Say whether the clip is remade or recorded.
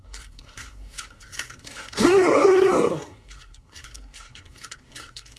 remade